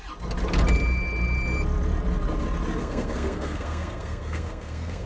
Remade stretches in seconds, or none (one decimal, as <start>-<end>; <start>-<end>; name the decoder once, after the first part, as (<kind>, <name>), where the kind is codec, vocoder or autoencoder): 2.8-5.1 (codec, SNAC)